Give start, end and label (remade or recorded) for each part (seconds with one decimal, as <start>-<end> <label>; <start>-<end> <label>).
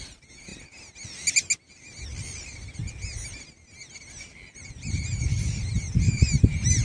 0.0-0.5 remade; 0.5-4.3 recorded; 4.3-6.8 remade